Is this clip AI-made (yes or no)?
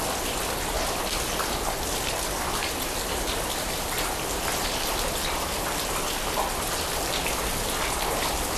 no